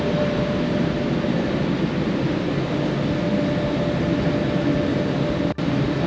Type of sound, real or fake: real